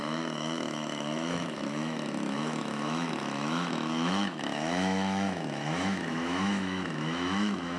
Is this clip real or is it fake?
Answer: fake